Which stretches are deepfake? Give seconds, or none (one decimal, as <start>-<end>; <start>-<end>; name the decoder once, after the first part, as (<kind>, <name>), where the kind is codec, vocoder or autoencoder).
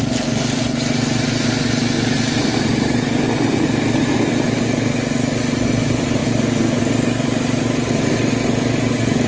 none